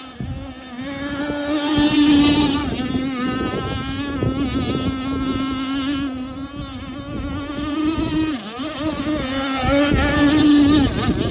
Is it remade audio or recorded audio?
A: recorded